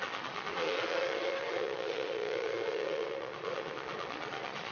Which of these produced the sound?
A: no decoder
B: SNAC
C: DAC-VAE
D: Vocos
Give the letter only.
D